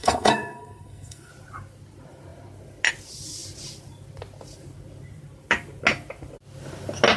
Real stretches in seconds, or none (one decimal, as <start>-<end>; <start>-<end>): 1.3-7.2